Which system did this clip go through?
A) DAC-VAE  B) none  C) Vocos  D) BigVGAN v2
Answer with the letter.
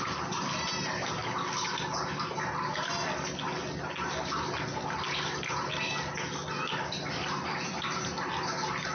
B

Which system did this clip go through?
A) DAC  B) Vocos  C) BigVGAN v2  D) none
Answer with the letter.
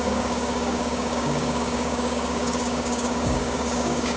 A